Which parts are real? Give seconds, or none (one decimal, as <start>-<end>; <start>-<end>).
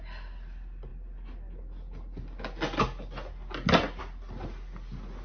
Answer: 0.0-5.2